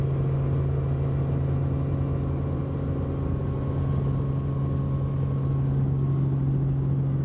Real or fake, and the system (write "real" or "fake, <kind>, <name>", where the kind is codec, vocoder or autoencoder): real